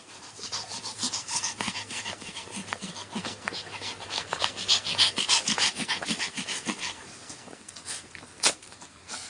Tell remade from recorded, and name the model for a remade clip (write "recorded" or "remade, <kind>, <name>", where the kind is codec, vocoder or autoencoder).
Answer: remade, codec, SNAC